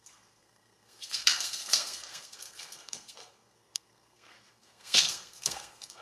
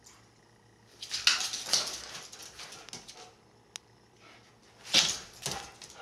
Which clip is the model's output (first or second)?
first